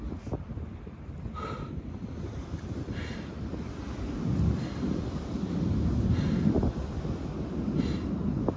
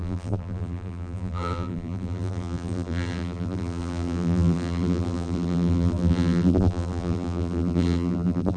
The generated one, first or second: second